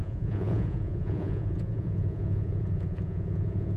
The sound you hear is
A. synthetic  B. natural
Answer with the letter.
A